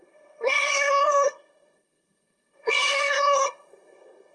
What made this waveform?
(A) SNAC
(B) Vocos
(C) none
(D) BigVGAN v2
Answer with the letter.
A